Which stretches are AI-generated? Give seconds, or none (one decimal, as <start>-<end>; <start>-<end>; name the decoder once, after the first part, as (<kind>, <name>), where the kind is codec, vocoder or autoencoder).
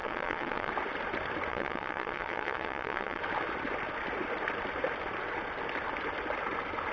0.0-0.7 (vocoder, WaveNeXt); 1.5-3.2